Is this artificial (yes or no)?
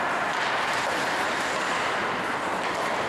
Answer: no